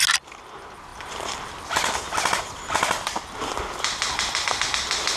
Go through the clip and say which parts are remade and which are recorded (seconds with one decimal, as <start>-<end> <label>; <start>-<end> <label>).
0.0-5.2 recorded